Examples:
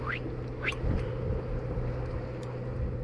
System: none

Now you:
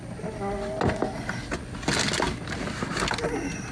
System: none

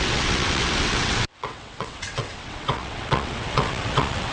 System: vocoder, WaveNeXt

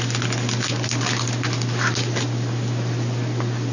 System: none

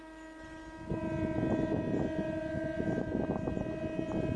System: none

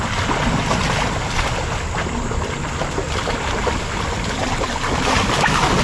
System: none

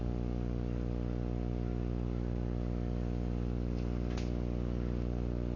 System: none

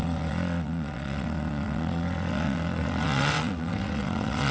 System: vocoder, WaveNeXt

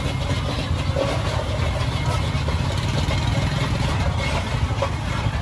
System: none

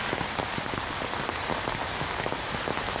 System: none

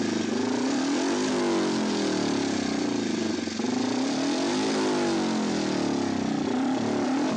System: none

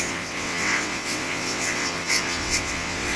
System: vocoder, WaveNeXt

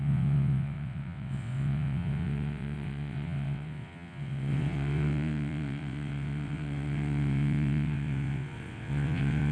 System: vocoder, WaveNeXt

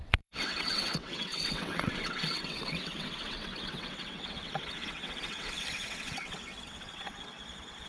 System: vocoder, WaveNeXt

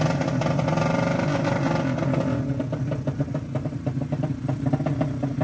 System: none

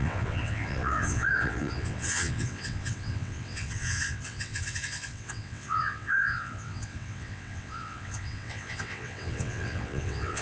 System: vocoder, WaveNeXt